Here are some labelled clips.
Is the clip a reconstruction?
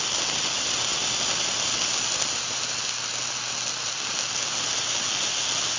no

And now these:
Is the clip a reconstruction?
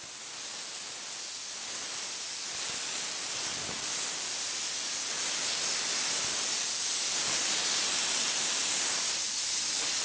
no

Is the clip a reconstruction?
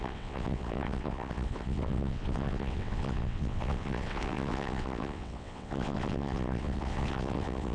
yes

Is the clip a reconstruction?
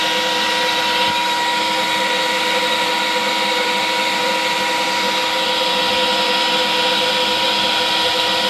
no